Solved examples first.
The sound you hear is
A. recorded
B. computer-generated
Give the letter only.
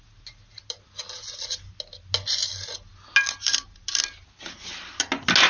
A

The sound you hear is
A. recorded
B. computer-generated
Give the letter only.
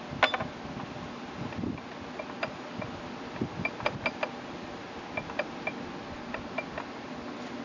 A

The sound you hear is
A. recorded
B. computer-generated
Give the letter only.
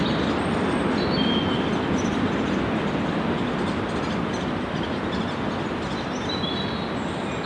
A